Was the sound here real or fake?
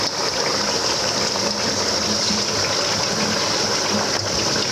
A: real